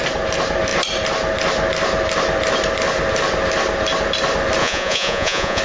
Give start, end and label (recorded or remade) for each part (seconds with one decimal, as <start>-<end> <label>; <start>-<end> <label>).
0.0-4.6 recorded; 4.6-5.6 remade